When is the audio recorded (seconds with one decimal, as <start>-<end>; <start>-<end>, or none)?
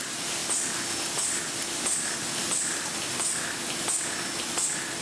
0.0-5.0